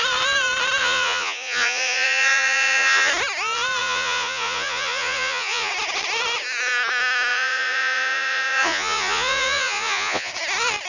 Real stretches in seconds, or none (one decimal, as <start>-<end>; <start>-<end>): 0.0-0.8; 3.1-3.8; 5.7-7.3; 10.3-10.9